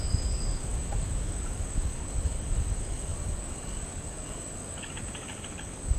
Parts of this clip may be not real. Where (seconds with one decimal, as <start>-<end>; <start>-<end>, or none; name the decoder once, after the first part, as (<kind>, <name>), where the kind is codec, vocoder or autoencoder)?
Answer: 0.0-6.0 (codec, DAC)